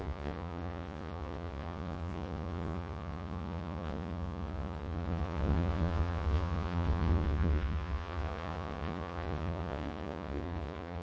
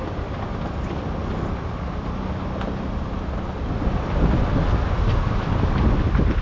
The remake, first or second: first